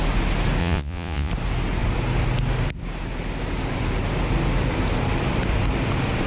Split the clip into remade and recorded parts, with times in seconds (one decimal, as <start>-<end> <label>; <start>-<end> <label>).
0.0-0.6 recorded; 0.6-1.3 remade; 1.3-6.3 recorded

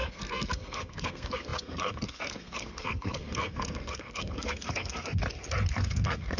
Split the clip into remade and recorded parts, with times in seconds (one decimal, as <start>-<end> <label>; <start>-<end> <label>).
0.0-5.2 remade; 5.2-5.7 recorded; 5.7-6.4 remade